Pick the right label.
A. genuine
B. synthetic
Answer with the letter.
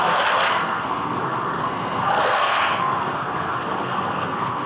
B